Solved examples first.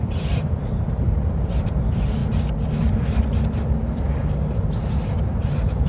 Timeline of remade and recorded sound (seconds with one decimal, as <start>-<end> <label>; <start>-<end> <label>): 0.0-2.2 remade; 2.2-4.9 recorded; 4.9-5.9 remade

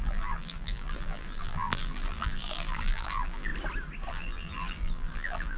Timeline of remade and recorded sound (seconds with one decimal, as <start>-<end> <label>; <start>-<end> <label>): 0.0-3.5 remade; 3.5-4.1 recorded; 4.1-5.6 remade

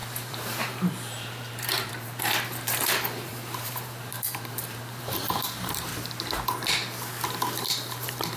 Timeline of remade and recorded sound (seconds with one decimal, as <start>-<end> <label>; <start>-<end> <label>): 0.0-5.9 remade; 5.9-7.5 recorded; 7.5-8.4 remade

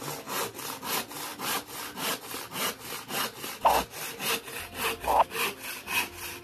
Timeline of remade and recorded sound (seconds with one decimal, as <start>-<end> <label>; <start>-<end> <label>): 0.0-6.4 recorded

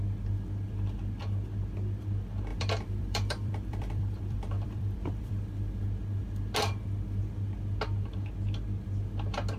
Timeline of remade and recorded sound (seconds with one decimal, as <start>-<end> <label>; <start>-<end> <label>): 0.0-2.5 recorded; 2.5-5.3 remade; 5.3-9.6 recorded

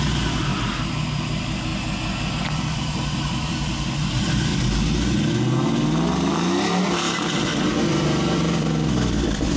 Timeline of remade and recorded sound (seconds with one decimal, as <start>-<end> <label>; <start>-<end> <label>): 0.0-0.5 remade; 0.5-1.1 recorded; 1.1-1.7 remade; 1.7-2.3 recorded; 2.3-4.5 remade; 4.5-6.8 recorded; 6.8-9.6 remade